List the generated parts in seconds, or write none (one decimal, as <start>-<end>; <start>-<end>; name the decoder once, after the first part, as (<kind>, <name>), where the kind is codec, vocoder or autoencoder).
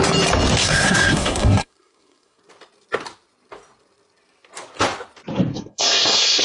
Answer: 0.6-2.4 (codec, SNAC); 5.5-6.4